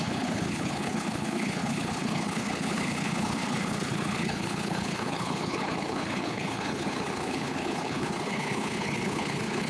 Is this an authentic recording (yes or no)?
no